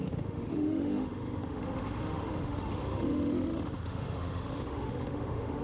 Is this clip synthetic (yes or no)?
yes